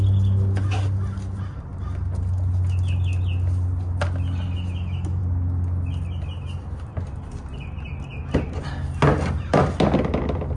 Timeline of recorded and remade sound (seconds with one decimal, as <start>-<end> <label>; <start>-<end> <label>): 0.0-10.6 recorded